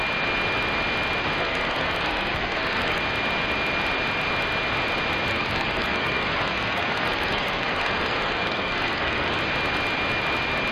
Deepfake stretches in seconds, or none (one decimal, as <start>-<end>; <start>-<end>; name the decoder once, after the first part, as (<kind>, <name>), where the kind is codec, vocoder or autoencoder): 1.4-3.0 (codec, SNAC); 5.3-9.4